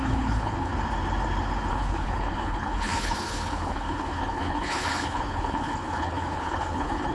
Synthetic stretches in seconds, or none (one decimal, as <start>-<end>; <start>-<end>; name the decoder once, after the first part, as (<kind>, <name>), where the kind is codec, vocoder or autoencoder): 0.0-0.7 (codec, HILCodec); 1.7-7.1